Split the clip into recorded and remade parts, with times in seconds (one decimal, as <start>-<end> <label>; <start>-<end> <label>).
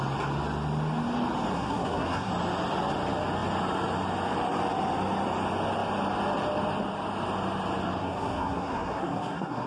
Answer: 0.0-1.5 recorded; 1.5-2.3 remade; 2.3-8.0 recorded; 8.0-9.7 remade